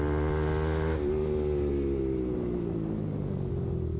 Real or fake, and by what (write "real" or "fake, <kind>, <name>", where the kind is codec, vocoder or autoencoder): real